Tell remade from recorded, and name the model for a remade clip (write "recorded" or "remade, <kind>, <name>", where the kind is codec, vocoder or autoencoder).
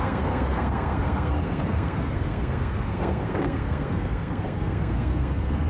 remade, codec, SNAC